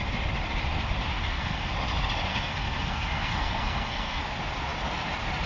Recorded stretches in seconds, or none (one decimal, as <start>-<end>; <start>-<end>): 0.0-1.1; 1.7-2.3; 4.2-5.5